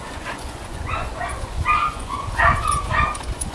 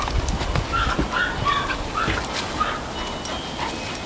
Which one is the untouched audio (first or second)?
second